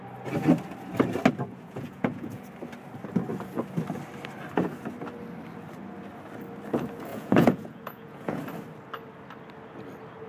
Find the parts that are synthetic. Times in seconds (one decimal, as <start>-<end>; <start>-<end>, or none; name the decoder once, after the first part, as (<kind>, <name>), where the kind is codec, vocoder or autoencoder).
1.5-2.4 (vocoder, Vocos); 7.1-8.4